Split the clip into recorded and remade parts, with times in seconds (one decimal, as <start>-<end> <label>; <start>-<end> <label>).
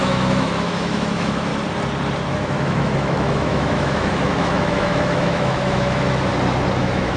0.0-1.5 remade; 1.5-2.3 recorded; 2.3-6.3 remade; 6.3-6.8 recorded; 6.8-7.2 remade